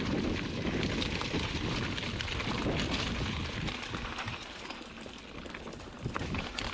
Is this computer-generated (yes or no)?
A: yes